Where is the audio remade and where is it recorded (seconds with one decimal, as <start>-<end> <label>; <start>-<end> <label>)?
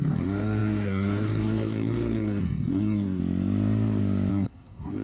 0.0-3.2 remade; 3.2-4.3 recorded; 4.3-5.0 remade